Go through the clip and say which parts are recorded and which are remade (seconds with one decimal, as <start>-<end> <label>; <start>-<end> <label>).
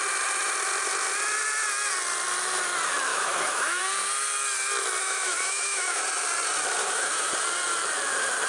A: 0.0-3.1 recorded; 3.1-3.8 remade; 3.8-5.0 recorded; 5.0-6.0 remade; 6.0-6.8 recorded; 6.8-7.3 remade; 7.3-8.5 recorded